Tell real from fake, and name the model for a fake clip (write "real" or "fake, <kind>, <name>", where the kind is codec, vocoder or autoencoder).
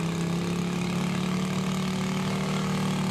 real